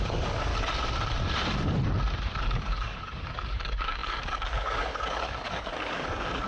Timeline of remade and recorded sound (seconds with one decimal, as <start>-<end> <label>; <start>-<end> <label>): 0.0-0.5 remade; 0.5-2.4 recorded; 2.4-6.5 remade

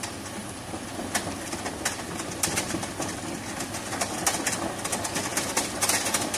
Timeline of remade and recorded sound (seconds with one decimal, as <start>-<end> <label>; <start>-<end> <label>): 0.0-6.4 recorded

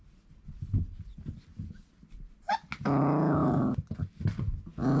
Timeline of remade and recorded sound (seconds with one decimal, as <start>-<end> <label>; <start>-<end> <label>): 0.0-5.0 recorded